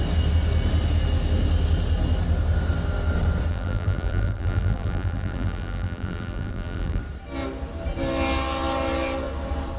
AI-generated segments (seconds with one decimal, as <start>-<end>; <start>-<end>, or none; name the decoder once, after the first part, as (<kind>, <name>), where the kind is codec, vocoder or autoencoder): 3.5-7.0 (vocoder, BigVGAN v2)